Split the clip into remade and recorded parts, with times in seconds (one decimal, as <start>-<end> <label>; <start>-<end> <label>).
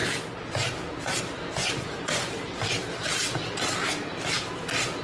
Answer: 0.0-1.6 recorded; 1.6-2.3 remade; 2.3-5.0 recorded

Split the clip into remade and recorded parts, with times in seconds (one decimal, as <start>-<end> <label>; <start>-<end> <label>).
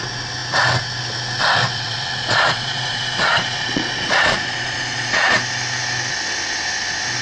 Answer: 0.0-1.6 recorded; 1.6-5.4 remade; 5.4-7.2 recorded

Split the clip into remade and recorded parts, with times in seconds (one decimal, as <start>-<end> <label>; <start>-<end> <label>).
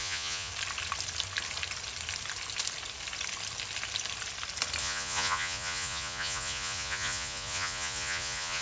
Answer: 0.0-0.5 remade; 0.5-4.8 recorded; 4.8-8.6 remade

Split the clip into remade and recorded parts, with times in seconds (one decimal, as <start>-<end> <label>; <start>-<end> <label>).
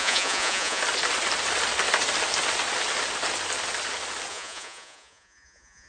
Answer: 0.0-0.8 remade; 0.8-4.3 recorded; 4.3-5.9 remade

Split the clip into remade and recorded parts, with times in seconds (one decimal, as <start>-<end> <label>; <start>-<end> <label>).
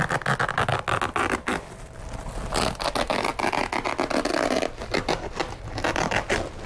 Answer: 0.0-6.7 recorded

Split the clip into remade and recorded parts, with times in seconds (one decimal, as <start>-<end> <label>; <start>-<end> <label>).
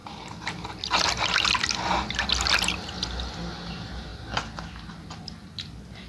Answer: 0.0-6.1 recorded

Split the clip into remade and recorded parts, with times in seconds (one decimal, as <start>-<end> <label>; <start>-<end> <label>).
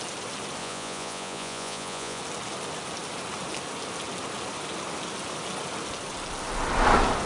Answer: 0.0-0.6 recorded; 0.6-2.2 remade; 2.2-7.3 recorded